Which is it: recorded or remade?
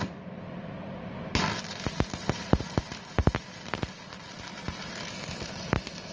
recorded